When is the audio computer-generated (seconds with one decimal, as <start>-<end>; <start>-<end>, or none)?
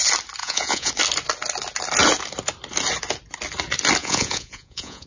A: 0.4-0.9; 4.0-5.1